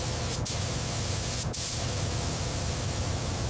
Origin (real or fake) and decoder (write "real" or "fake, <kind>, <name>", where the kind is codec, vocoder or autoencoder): real